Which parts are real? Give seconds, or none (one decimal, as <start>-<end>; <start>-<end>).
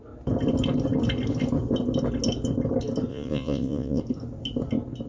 0.0-3.1; 4.0-5.1